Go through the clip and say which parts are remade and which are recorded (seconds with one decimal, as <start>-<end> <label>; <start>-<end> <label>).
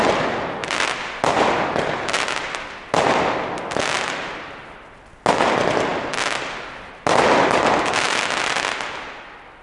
0.0-9.6 recorded